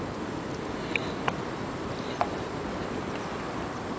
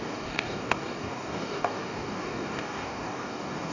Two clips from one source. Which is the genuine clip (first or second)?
first